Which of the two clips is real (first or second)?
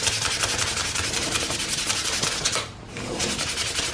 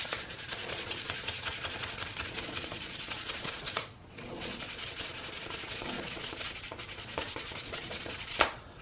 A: first